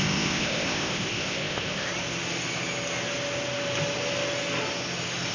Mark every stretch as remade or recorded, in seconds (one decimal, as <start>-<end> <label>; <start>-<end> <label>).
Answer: 0.0-1.9 remade; 1.9-5.3 recorded